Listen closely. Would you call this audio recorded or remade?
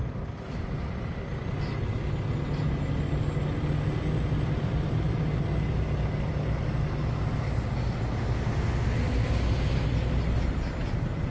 recorded